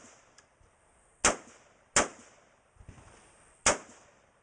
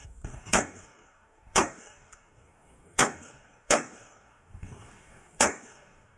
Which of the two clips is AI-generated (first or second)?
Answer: second